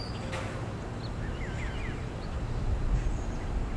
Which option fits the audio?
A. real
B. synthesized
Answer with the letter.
A